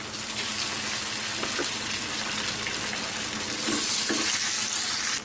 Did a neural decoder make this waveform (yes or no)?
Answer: no